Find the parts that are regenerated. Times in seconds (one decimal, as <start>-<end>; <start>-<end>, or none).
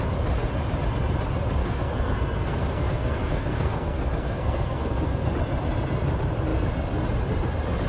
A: 1.6-5.3